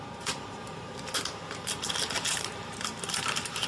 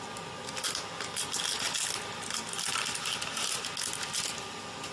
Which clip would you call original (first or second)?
second